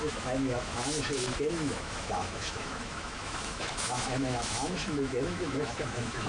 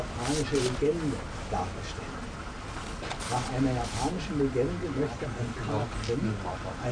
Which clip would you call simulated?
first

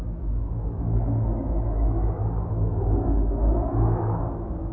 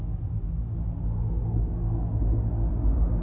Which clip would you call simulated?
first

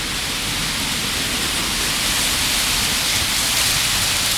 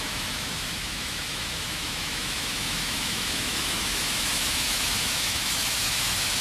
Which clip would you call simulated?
second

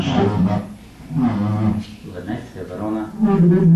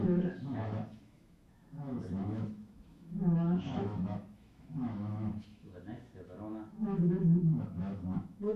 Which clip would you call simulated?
second